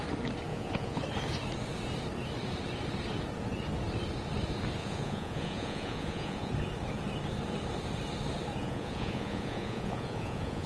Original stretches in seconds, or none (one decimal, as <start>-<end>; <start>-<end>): 0.0-0.5; 1.0-4.8; 6.5-8.6